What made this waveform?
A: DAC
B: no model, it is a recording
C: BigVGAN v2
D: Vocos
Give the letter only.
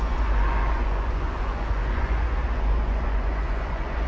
D